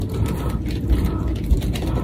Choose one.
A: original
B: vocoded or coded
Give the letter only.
A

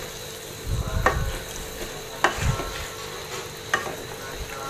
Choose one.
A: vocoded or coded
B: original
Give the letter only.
B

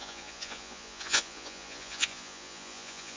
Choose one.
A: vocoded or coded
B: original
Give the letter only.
A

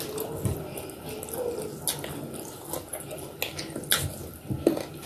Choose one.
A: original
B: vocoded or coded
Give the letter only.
A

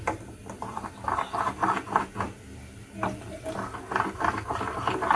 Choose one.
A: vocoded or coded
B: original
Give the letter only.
B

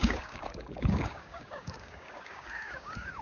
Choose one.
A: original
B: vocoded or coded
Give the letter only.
B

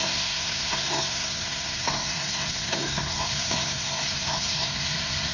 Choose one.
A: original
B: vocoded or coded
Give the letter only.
B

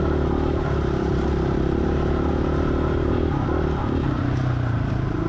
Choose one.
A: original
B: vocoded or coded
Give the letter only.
A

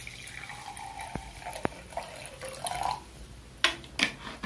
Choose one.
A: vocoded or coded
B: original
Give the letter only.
B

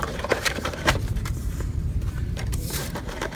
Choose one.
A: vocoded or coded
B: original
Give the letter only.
A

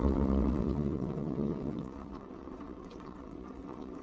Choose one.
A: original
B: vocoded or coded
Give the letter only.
B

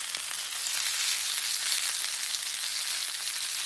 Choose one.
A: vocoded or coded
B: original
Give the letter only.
B